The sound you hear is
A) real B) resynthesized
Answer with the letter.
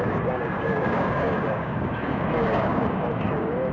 B